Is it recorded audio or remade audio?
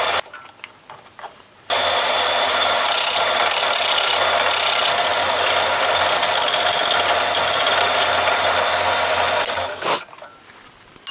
recorded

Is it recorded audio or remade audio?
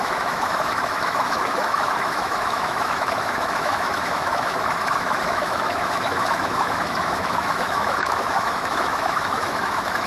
remade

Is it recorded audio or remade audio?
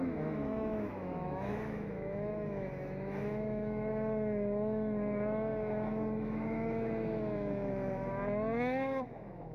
remade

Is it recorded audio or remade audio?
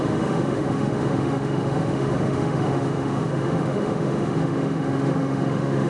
remade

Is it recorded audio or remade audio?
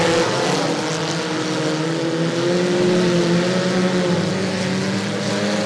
recorded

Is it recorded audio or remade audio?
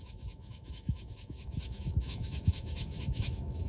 remade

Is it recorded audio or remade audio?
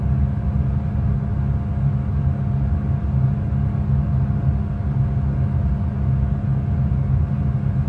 recorded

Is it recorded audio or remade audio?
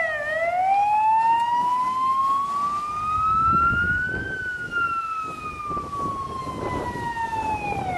recorded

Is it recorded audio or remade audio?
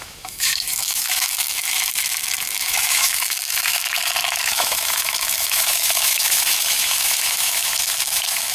remade